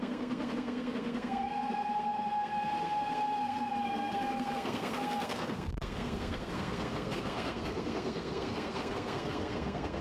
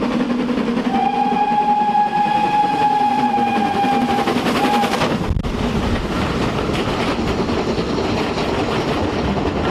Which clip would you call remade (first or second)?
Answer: first